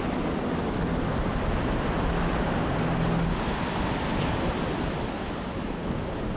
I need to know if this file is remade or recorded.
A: recorded